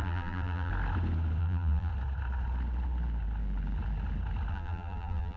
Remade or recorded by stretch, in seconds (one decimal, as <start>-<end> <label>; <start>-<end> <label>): 0.0-0.7 remade; 0.7-1.4 recorded; 1.4-1.9 remade; 1.9-4.5 recorded; 4.5-5.4 remade